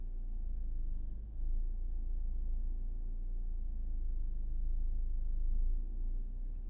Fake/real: real